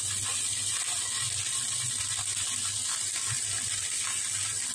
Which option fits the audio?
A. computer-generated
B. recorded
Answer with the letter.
B